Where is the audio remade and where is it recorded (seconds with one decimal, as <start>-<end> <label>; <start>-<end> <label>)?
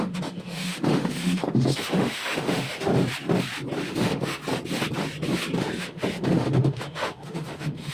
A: 0.0-2.9 remade; 2.9-3.8 recorded; 3.8-4.4 remade; 4.4-5.6 recorded; 5.6-7.9 remade